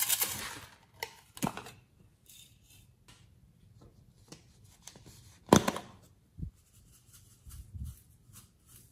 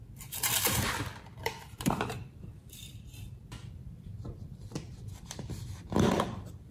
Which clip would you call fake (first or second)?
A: second